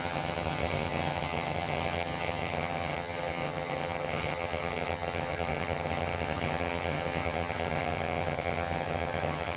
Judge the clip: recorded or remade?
remade